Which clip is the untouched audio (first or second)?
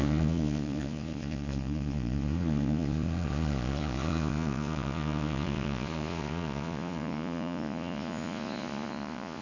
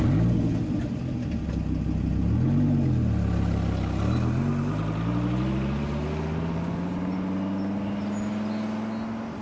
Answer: second